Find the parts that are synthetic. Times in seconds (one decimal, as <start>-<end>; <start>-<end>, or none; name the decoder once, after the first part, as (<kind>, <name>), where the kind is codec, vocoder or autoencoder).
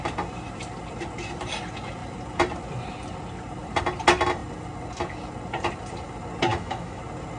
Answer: 6.5-7.0 (autoencoder, DAC-VAE)